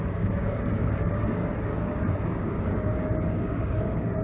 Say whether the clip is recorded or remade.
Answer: remade